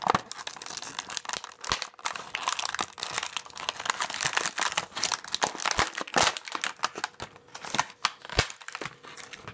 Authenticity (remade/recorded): recorded